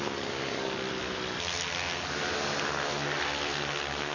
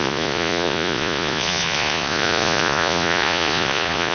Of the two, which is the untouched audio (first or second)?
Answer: first